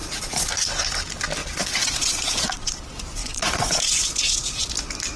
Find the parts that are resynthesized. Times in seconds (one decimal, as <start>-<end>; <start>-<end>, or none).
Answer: 0.0-0.5; 1.4-2.8; 3.2-4.7